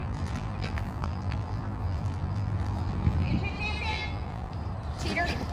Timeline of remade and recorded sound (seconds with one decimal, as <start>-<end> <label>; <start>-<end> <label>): 0.0-3.3 remade; 3.3-3.9 recorded; 3.9-4.5 remade; 4.5-5.5 recorded